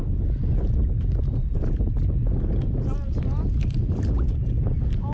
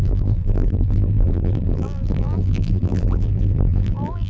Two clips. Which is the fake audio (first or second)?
second